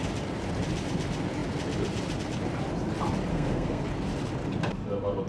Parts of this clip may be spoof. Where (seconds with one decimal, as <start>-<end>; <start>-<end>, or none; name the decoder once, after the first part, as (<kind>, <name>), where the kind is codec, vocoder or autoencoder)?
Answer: 3.3-3.8 (codec, SNAC)

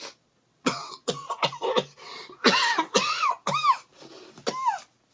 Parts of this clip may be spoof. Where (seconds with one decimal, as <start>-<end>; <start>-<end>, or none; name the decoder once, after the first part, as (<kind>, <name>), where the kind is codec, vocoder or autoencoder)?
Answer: 0.5-1.5 (vocoder, WaveNeXt); 2.0-3.2